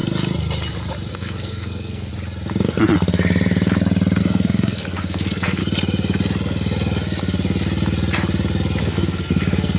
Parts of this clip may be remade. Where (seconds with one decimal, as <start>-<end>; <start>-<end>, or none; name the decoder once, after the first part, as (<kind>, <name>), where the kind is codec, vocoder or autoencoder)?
1.1-2.1 (codec, SNAC); 4.2-5.6; 8.8-9.8